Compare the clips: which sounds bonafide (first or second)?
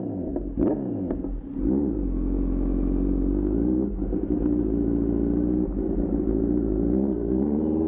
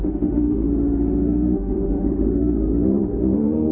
first